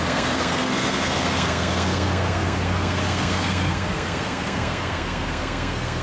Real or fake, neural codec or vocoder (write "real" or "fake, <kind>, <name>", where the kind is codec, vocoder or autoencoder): fake, codec, SNAC